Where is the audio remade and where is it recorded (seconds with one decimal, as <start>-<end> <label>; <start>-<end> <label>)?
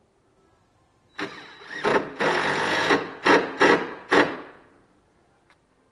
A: 0.0-1.9 recorded; 1.9-5.4 remade; 5.4-5.9 recorded